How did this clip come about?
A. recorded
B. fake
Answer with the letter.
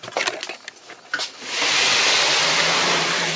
A